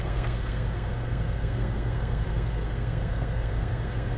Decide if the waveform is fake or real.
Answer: fake